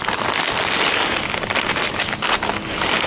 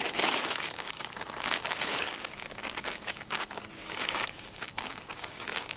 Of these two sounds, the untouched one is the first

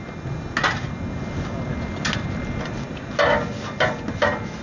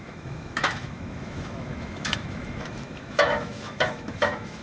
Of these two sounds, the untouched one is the first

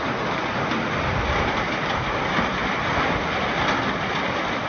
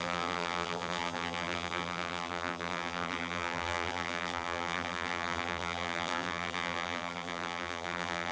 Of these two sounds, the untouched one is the first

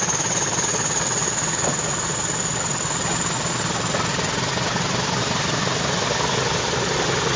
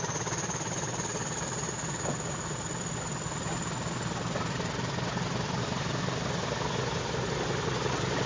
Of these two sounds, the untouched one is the second